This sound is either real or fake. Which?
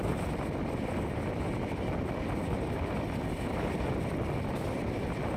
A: real